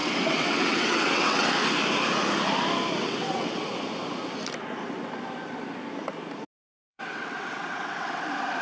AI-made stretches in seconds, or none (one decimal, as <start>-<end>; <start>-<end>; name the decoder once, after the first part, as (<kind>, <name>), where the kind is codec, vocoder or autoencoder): 0.0-1.5 (vocoder, WaveNeXt); 3.0-3.7; 6.9-8.2

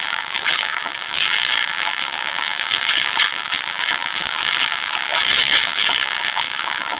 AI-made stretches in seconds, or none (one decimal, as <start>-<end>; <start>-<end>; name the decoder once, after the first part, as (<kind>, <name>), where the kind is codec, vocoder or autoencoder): 0.0-7.0 (vocoder, WaveNeXt)

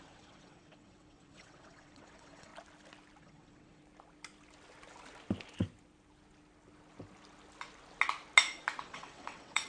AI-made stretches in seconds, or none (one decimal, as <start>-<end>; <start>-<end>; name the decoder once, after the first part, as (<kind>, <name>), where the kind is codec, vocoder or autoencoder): 0.0-2.5 (vocoder, WaveNeXt); 3.2-3.8; 8.8-9.7

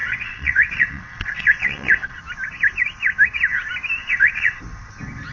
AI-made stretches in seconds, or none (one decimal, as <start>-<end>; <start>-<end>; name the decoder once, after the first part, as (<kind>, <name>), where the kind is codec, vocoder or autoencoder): 0.0-2.2 (vocoder, WaveNeXt); 4.0-4.6